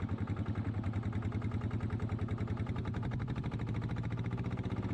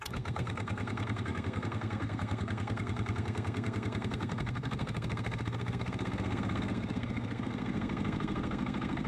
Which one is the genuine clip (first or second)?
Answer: first